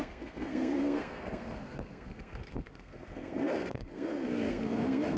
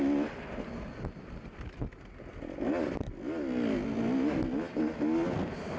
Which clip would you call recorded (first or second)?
second